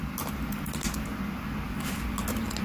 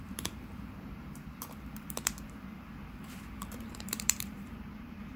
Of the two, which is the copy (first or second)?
second